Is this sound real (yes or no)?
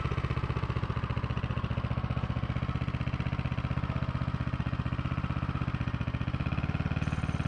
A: yes